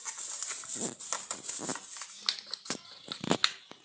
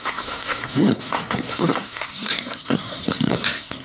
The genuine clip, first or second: first